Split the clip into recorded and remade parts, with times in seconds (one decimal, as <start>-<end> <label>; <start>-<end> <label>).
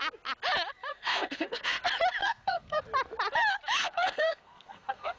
0.0-0.9 recorded; 0.9-1.8 remade; 1.8-2.2 recorded; 2.2-2.8 remade; 2.8-3.8 recorded; 3.8-5.2 remade